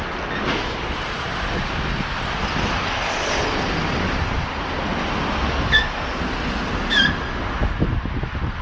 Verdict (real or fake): real